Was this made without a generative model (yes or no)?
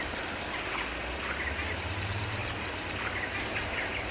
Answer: yes